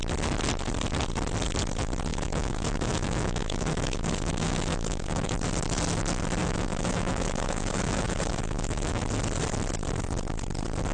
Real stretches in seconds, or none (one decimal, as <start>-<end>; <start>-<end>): 0.0-2.1; 5.3-6.4; 9.0-10.9